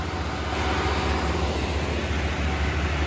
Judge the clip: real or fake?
real